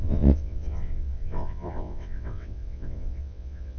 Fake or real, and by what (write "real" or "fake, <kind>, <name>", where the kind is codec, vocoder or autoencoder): fake, vocoder, WaveNeXt